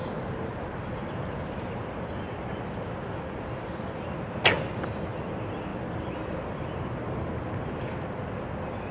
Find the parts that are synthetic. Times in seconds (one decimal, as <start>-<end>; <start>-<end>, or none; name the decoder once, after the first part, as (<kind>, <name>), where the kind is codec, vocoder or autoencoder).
none